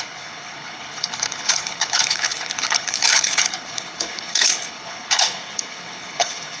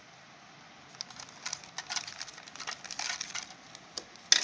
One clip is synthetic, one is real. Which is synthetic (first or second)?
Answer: first